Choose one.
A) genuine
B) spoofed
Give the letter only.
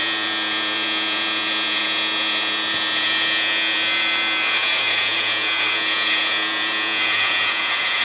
B